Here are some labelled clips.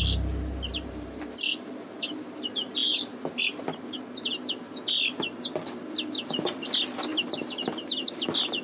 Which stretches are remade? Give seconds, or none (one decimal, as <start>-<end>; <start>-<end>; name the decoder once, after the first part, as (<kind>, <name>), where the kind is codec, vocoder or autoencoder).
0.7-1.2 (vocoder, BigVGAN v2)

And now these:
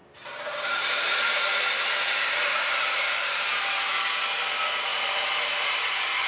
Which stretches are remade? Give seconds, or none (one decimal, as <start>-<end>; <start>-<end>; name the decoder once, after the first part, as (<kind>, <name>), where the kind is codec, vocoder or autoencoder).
0.0-3.7 (vocoder, BigVGAN v2); 4.9-6.3

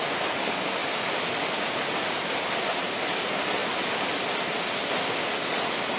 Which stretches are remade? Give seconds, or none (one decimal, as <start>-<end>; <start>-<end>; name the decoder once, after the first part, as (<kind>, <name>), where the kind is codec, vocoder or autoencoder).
0.8-2.3 (vocoder, BigVGAN v2); 3.6-4.9

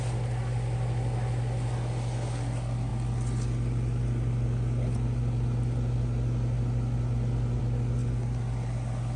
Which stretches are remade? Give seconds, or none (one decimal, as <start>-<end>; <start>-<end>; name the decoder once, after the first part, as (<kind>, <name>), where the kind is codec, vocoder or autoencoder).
none